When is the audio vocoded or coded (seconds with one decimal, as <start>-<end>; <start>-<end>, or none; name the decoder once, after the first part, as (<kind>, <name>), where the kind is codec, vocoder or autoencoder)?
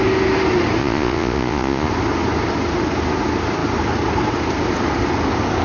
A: 0.8-1.9 (vocoder, Vocos)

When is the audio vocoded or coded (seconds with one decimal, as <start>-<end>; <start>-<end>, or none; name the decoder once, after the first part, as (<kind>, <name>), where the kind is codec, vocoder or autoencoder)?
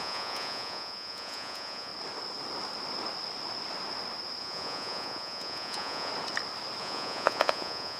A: 0.0-1.9 (vocoder, Vocos); 4.4-6.1; 6.8-8.0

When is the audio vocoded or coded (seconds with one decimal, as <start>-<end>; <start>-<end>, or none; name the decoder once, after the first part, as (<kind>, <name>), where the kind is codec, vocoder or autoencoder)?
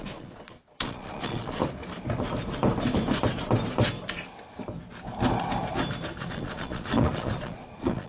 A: 0.0-1.6 (vocoder, Vocos); 6.2-8.1